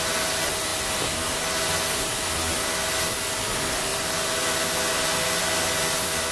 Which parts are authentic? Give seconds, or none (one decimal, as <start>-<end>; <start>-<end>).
0.0-6.3